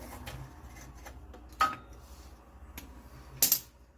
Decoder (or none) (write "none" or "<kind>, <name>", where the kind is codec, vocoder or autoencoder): none